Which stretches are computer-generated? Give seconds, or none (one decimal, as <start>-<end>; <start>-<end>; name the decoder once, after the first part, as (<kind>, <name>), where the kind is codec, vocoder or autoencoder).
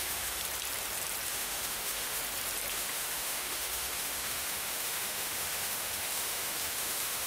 0.0-0.4 (autoencoder, DAC-VAE); 1.3-2.2; 2.7-7.3